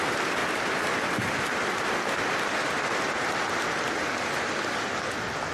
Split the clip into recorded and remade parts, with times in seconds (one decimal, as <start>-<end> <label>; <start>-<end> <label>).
0.0-5.5 recorded

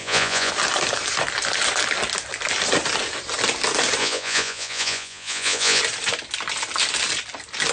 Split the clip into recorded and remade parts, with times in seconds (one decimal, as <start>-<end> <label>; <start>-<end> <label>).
0.0-0.5 remade; 0.5-4.0 recorded; 4.0-5.8 remade; 5.8-7.7 recorded

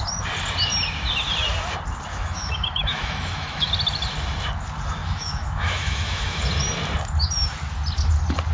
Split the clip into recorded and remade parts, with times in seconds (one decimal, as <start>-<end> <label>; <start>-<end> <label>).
0.0-2.1 recorded; 2.1-3.7 remade; 3.7-5.0 recorded; 5.0-6.4 remade; 6.4-8.5 recorded

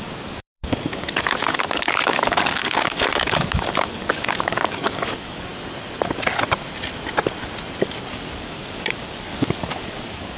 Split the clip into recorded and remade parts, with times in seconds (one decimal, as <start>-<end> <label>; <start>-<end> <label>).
0.0-5.5 remade; 5.5-8.1 recorded; 8.1-10.4 remade

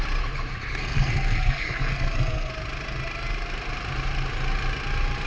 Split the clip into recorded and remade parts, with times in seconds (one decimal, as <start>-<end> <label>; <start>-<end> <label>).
0.0-0.8 recorded; 0.8-2.5 remade; 2.5-5.3 recorded

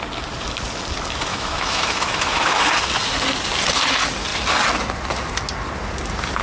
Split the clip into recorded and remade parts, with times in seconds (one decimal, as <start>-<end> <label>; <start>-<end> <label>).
0.0-1.3 recorded; 1.3-2.6 remade; 2.6-6.4 recorded